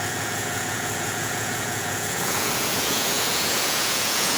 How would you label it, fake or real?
fake